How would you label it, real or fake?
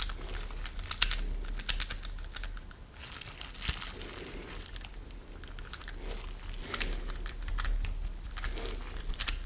real